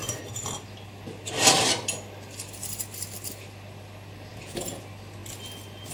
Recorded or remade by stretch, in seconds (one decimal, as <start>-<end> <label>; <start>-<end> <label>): 0.0-4.3 recorded; 4.3-4.8 remade; 4.8-5.9 recorded